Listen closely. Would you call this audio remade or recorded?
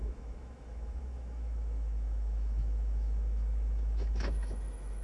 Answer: remade